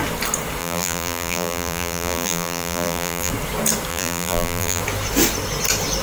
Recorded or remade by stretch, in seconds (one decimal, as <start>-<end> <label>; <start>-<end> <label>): 0.0-0.6 recorded; 0.6-3.3 remade; 3.3-3.9 recorded; 3.9-4.8 remade; 4.8-6.0 recorded